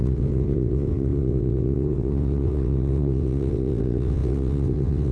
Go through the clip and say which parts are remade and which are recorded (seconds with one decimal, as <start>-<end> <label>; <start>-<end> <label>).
0.0-5.1 remade